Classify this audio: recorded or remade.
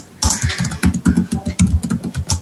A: recorded